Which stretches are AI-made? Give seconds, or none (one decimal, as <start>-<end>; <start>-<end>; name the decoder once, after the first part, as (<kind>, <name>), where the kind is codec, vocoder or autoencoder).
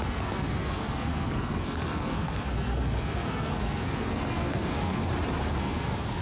0.0-5.0 (codec, SNAC); 5.6-6.2